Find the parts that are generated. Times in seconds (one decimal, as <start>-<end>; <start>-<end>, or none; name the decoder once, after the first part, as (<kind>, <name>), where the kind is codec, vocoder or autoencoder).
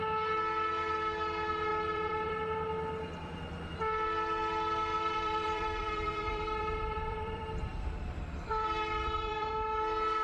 1.7-2.3 (vocoder, BigVGAN v2); 4.9-9.5